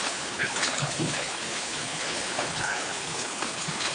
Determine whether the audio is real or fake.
fake